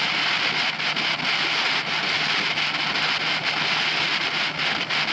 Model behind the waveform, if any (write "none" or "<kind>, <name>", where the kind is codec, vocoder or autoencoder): none